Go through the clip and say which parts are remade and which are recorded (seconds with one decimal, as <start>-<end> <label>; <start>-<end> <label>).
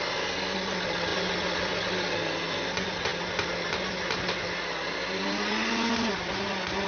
0.0-6.9 recorded